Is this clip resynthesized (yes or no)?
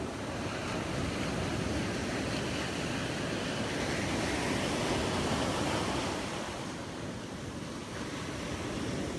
no